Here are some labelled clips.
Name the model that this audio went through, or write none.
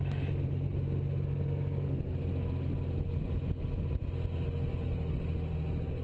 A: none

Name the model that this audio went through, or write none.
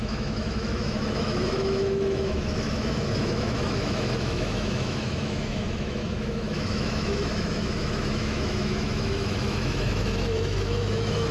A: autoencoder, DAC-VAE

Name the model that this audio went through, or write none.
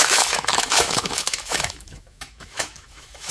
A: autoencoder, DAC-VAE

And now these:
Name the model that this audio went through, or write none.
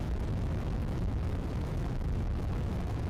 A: autoencoder, DAC-VAE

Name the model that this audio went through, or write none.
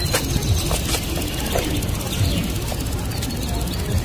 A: none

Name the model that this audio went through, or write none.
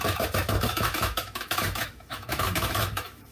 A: autoencoder, DAC-VAE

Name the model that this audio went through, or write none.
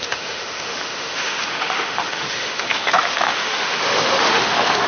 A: autoencoder, DAC-VAE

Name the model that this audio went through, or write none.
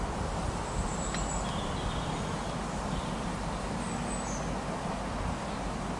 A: none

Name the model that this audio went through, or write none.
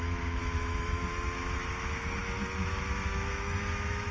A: autoencoder, DAC-VAE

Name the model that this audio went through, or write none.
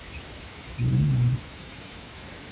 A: autoencoder, DAC-VAE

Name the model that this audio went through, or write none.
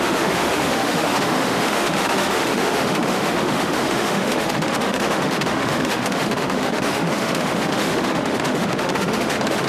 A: autoencoder, DAC-VAE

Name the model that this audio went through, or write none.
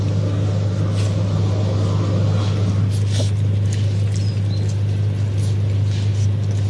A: none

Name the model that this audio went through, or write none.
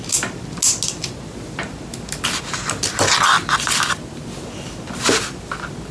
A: none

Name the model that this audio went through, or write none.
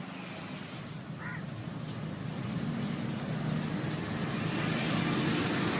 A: none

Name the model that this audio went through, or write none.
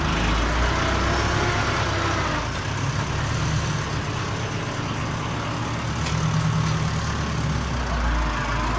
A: none